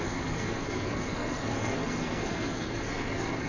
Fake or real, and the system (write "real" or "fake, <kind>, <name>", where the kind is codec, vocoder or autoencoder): fake, codec, SNAC